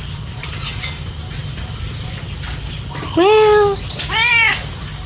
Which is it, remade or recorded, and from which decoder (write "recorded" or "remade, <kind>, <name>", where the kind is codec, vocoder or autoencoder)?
recorded